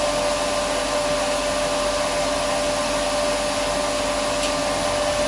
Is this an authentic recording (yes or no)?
yes